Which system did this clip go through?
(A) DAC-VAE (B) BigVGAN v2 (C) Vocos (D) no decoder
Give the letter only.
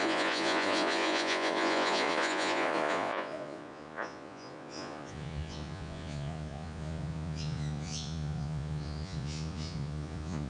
C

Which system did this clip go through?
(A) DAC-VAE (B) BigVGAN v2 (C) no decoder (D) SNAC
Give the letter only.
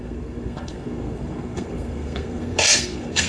D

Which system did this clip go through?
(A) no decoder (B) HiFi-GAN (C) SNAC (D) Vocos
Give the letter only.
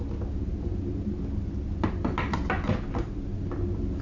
A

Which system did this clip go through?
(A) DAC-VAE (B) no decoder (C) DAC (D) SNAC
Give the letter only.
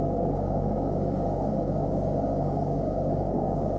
C